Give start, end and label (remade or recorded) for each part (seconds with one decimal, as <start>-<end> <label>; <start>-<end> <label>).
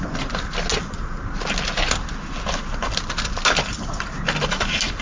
0.0-5.0 recorded